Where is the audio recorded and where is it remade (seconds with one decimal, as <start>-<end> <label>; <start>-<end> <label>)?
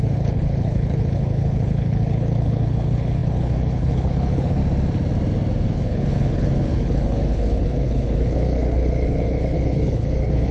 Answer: 0.0-4.6 remade; 4.6-5.7 recorded; 5.7-10.5 remade